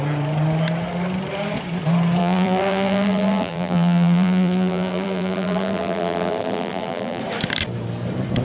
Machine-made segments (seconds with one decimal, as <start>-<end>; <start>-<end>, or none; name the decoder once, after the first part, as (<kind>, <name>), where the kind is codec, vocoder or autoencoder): 2.2-7.2 (vocoder, BigVGAN v2)